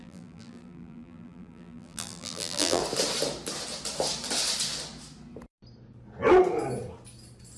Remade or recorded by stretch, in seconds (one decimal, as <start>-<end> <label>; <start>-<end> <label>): 0.0-2.8 remade; 2.8-7.6 recorded